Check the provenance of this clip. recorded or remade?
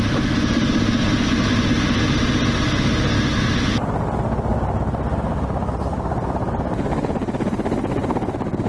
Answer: recorded